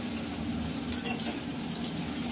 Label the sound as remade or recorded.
recorded